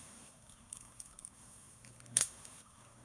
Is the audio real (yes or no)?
no